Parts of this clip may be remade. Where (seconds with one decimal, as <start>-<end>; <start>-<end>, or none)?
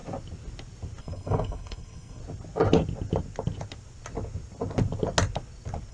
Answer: 1.0-2.2